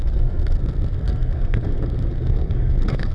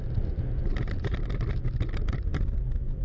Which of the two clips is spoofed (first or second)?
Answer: first